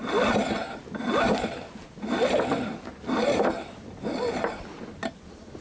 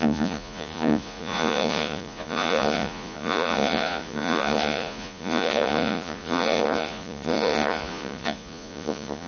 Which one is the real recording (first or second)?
first